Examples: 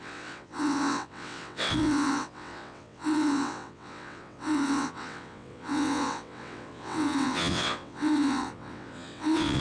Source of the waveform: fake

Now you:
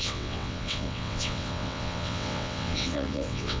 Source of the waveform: fake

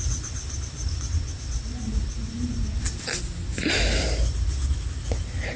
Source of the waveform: real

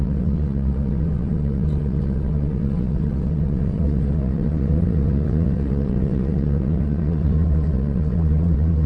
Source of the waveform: fake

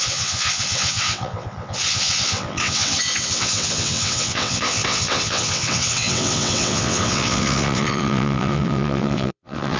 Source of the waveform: fake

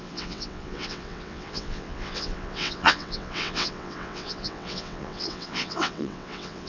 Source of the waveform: fake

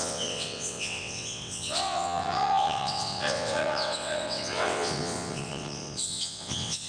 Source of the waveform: fake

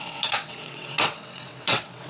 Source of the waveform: fake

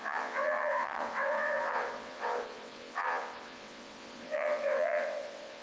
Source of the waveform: fake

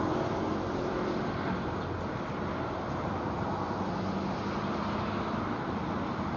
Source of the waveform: real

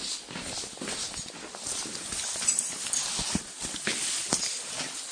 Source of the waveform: real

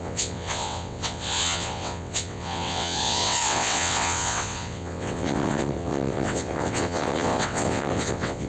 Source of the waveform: fake